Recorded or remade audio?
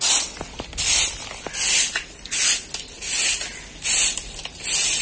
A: recorded